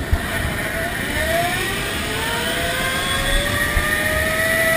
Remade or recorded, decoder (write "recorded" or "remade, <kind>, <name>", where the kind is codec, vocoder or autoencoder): recorded